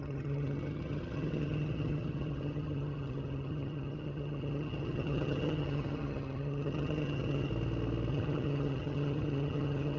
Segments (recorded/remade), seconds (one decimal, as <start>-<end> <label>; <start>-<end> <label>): 0.0-7.5 remade; 7.5-8.1 recorded; 8.1-10.0 remade